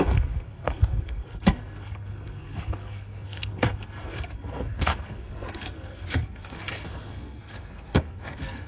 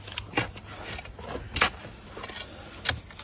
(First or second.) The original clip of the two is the second